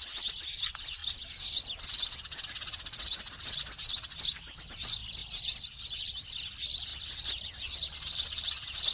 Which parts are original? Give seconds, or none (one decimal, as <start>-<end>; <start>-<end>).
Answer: 0.0-8.9